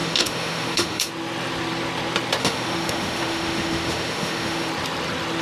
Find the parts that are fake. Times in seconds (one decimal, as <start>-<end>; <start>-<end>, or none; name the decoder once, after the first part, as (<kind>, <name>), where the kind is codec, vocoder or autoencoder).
0.0-1.1 (autoencoder, DAC-VAE); 2.4-4.7